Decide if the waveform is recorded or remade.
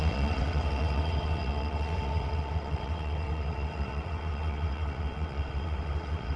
remade